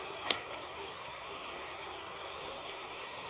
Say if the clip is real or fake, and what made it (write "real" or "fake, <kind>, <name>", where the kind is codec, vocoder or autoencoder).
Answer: fake, codec, SNAC